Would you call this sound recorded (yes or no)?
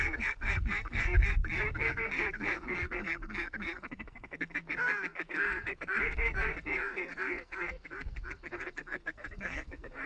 no